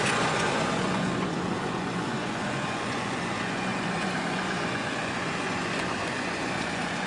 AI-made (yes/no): yes